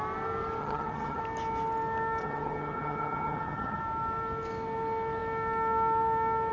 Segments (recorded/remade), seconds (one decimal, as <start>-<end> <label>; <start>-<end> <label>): 0.0-0.6 recorded; 0.6-1.2 remade; 1.2-2.2 recorded; 2.2-3.8 remade; 3.8-6.5 recorded